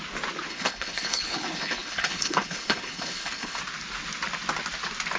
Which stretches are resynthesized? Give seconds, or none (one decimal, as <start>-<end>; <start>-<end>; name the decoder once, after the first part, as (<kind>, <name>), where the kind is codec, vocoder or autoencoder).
0.5-3.6 (codec, HILCodec)